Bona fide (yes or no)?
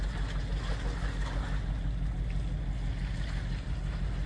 yes